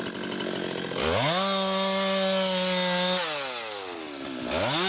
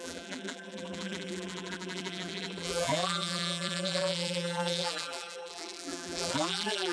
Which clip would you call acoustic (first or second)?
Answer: first